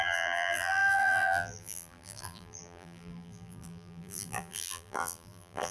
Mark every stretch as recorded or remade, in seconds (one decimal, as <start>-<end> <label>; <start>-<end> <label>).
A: 0.0-5.7 remade